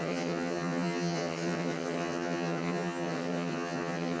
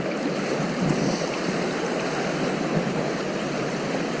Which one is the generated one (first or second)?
first